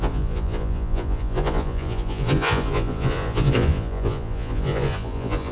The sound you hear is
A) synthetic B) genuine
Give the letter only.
A